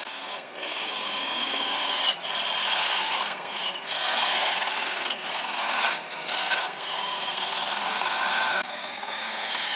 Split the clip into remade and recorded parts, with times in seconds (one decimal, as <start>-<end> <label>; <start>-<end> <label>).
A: 0.0-2.0 remade; 2.0-2.7 recorded; 2.7-9.8 remade